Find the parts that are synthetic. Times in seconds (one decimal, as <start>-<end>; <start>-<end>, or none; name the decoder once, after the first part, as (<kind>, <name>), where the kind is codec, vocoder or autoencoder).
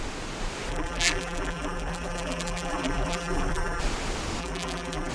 0.7-3.8 (vocoder, BigVGAN v2); 4.4-5.1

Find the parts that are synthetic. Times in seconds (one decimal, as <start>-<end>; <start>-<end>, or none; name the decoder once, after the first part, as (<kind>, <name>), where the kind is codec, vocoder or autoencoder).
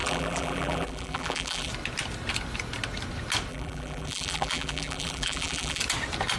0.0-1.7 (vocoder, BigVGAN v2); 3.5-5.8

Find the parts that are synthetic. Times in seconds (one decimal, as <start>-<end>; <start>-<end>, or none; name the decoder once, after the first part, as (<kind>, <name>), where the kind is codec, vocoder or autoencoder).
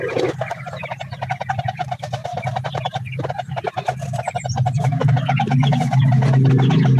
1.8-5.5 (vocoder, BigVGAN v2)